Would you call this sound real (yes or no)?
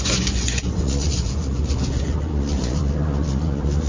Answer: no